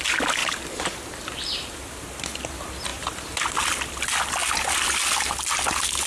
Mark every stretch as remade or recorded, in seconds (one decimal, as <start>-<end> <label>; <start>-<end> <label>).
0.0-0.4 recorded; 0.4-2.2 remade; 2.2-2.9 recorded; 2.9-3.5 remade; 3.5-6.1 recorded